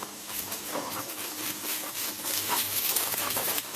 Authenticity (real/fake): fake